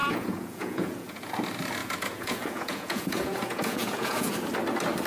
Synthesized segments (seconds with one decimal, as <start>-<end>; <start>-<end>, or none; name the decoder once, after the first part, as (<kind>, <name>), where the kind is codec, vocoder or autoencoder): 0.0-1.3 (vocoder, Vocos); 1.8-4.3